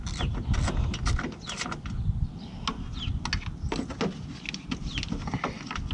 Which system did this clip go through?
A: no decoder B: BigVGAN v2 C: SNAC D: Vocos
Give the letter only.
A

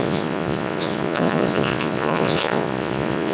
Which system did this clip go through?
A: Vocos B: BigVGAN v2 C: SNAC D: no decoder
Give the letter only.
A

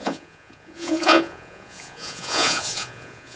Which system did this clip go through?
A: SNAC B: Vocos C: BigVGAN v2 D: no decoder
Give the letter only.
B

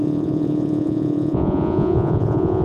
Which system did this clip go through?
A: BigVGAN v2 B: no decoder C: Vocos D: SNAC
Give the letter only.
C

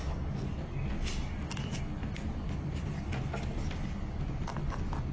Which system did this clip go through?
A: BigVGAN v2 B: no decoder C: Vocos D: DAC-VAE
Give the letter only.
B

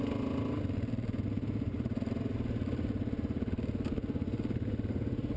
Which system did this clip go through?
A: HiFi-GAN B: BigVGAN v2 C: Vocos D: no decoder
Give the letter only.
D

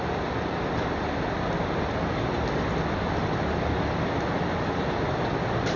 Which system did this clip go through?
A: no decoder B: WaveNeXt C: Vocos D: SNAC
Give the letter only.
A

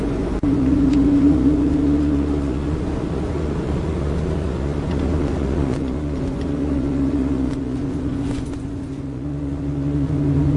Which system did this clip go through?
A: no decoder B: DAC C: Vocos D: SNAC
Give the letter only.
C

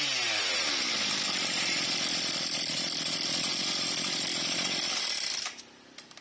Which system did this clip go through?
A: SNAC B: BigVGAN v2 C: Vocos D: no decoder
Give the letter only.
D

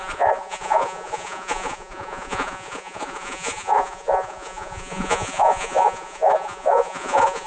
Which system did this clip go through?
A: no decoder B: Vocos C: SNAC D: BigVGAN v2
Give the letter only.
B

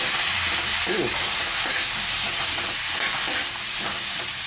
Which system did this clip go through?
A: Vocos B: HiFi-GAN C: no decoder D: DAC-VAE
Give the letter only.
C